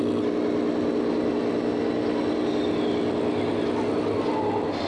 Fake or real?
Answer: real